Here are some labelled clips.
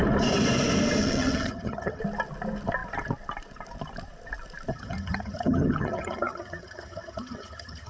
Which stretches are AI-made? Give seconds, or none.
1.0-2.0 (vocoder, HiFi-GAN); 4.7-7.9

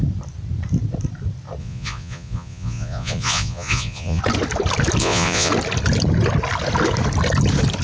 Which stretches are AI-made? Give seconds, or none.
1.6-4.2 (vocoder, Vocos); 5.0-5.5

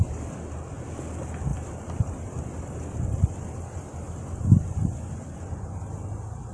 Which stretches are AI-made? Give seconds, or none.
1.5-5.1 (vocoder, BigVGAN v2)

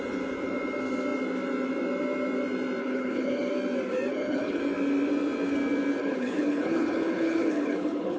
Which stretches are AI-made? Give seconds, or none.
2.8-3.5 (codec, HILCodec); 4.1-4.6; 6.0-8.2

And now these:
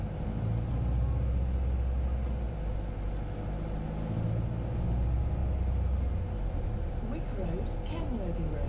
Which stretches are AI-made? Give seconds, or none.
none

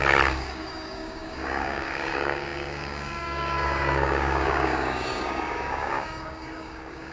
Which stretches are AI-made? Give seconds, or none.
0.0-7.1 (codec, DAC)

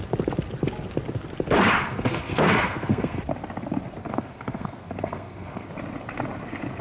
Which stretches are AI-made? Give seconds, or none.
1.8-3.2 (codec, SNAC); 4.0-5.7

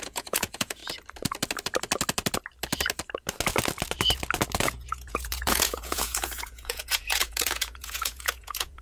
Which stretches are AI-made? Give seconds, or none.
0.0-0.8 (vocoder, Vocos); 4.6-8.8